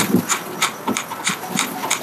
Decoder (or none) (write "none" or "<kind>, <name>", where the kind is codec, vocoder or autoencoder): none